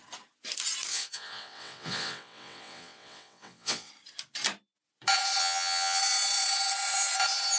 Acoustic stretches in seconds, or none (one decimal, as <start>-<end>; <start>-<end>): 0.0-0.9; 3.9-5.4; 6.0-7.6